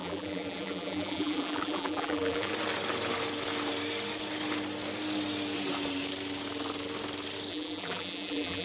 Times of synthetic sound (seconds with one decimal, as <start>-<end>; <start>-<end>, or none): 0.0-2.5; 7.5-8.6